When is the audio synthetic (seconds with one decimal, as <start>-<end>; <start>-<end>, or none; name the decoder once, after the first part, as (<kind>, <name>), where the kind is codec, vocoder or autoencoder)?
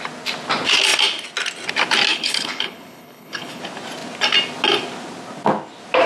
2.1-3.6 (codec, HILCodec)